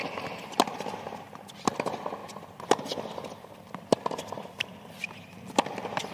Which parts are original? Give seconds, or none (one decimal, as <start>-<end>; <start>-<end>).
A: 0.0-6.1